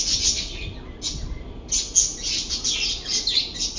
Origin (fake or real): real